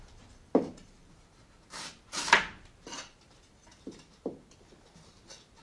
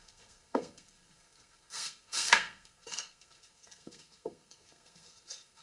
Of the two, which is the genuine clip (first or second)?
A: first